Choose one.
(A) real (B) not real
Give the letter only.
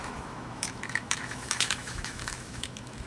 B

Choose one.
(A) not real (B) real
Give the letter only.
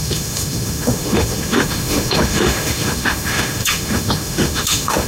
A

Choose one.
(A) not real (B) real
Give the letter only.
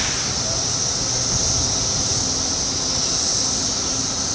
B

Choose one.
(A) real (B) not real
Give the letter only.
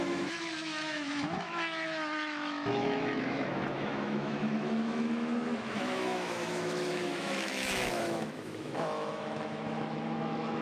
B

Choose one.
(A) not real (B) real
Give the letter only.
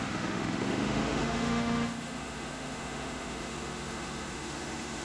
A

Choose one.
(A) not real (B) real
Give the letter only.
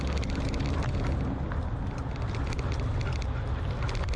B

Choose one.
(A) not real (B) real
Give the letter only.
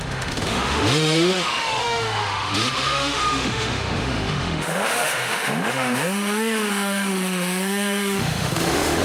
A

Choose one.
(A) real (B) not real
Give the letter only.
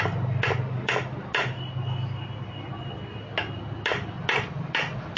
A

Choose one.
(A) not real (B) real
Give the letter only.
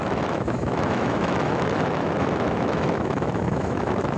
A